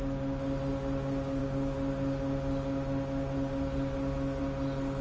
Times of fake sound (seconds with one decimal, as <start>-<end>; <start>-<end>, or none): none